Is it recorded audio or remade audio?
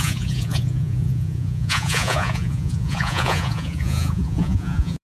remade